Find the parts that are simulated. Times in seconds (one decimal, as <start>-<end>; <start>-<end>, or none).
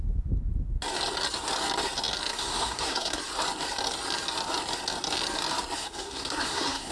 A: 2.3-3.2; 5.8-6.9